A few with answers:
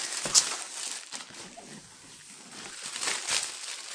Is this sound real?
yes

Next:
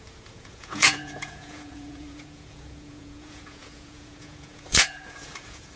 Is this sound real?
no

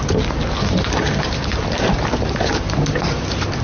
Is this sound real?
yes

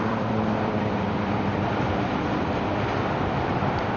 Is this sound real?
no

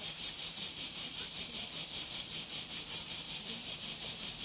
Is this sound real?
no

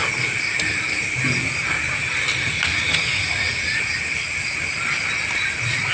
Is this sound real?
yes